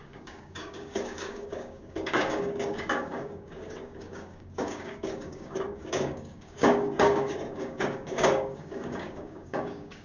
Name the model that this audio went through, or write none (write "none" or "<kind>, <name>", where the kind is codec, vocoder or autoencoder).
codec, DAC